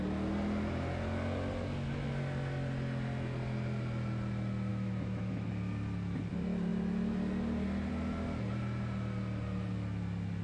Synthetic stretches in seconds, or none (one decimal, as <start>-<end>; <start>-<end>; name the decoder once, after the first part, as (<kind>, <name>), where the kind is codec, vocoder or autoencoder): 4.7-5.5 (autoencoder, DAC-VAE)